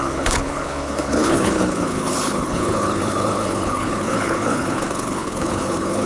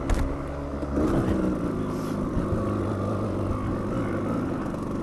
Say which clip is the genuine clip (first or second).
second